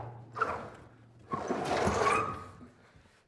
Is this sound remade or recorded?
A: recorded